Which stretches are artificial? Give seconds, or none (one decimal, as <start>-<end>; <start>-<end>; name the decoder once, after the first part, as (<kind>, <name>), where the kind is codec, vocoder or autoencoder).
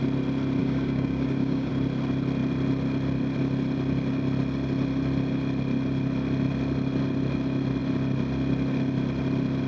0.6-1.7 (codec, DAC)